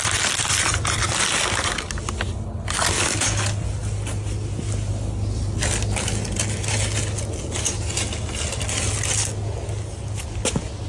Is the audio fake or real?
real